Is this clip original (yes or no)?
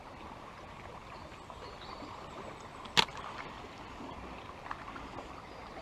yes